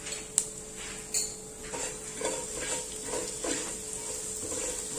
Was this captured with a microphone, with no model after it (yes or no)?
yes